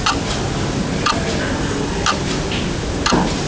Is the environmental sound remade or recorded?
recorded